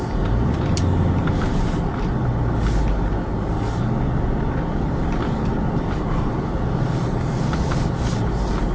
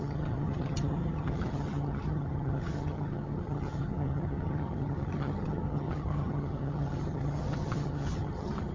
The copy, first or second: second